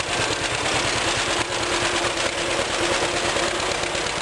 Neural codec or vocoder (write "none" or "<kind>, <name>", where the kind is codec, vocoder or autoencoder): none